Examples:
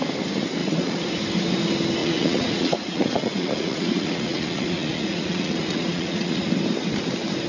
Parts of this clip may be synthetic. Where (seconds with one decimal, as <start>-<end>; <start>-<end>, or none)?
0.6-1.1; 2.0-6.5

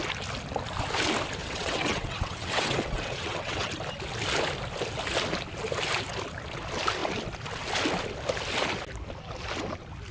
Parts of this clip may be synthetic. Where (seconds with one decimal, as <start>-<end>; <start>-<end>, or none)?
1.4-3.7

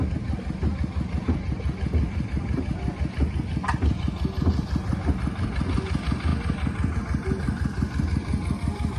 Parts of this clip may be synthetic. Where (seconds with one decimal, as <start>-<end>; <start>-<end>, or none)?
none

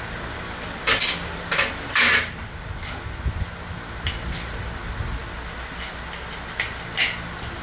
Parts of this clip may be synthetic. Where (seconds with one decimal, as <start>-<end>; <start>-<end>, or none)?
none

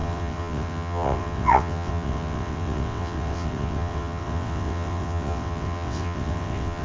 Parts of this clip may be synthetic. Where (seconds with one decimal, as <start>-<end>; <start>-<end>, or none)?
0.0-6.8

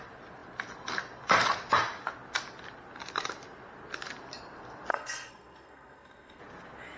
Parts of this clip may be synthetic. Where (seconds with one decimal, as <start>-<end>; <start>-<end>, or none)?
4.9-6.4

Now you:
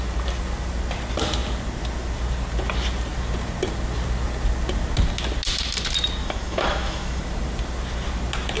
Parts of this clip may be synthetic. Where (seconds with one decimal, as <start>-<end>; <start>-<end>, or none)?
6.2-7.2